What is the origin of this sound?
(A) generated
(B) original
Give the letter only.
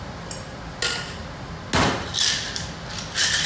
B